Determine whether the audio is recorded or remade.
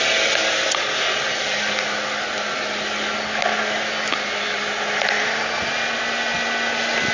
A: recorded